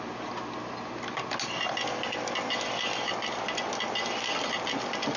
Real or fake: real